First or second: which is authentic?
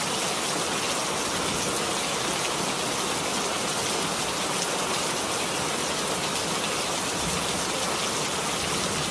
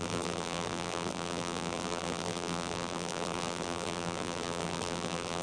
first